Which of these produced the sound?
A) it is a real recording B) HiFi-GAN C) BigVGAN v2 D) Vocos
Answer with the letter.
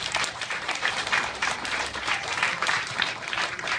C